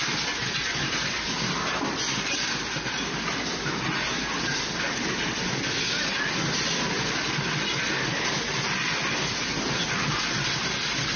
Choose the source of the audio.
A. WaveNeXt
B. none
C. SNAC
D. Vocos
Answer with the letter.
B